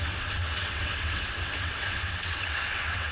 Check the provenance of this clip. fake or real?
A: fake